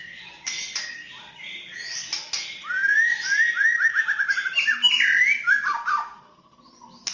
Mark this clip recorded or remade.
recorded